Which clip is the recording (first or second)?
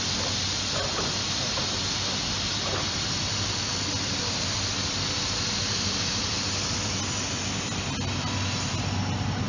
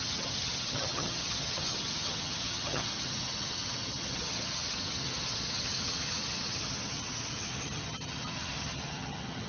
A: first